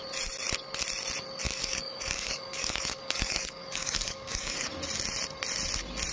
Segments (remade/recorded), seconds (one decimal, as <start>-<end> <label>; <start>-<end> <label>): 0.0-1.4 recorded; 1.4-4.7 remade; 4.7-6.1 recorded